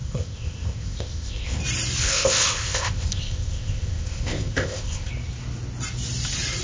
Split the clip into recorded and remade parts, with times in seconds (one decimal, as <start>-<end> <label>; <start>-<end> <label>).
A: 0.0-1.6 remade; 1.6-2.0 recorded; 2.0-5.1 remade; 5.1-6.6 recorded